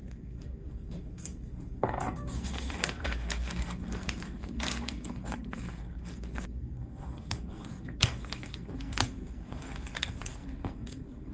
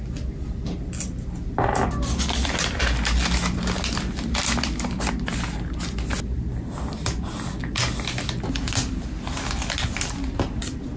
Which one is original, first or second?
second